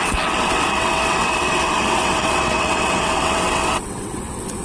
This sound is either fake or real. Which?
fake